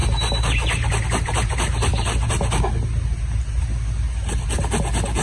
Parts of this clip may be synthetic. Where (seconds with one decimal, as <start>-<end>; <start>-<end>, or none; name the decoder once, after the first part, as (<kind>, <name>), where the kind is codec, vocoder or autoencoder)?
none